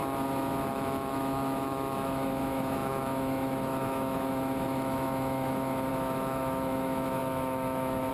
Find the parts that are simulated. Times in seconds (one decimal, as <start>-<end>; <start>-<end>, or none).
0.7-8.1